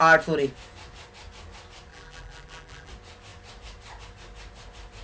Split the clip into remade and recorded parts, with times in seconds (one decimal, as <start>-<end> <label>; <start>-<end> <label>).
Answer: 0.0-1.9 recorded; 1.9-2.9 remade; 2.9-5.0 recorded